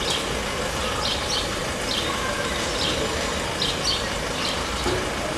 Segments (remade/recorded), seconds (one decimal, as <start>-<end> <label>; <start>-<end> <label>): 0.0-5.4 recorded

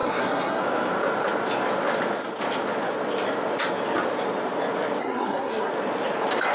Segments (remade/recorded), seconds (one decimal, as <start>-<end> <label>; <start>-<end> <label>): 0.0-0.6 remade; 0.6-5.0 recorded; 5.0-5.7 remade; 5.7-6.5 recorded

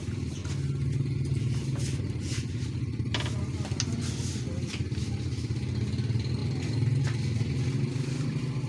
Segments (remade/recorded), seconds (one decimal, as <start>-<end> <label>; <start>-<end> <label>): 0.0-8.7 recorded

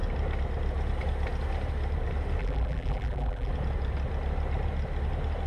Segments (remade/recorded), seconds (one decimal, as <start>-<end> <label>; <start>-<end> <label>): 0.0-2.4 recorded; 2.4-3.5 remade; 3.5-5.5 recorded

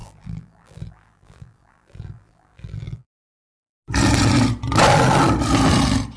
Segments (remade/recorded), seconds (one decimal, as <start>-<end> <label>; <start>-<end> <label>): 0.0-3.7 remade; 3.7-6.2 recorded

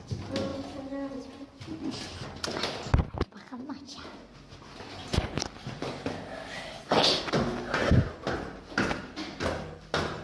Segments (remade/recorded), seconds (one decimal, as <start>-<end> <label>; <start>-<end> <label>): 0.0-10.2 recorded

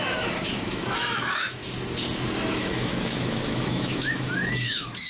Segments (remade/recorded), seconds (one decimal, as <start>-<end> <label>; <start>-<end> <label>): 0.0-1.6 remade; 1.6-2.4 recorded; 2.4-5.1 remade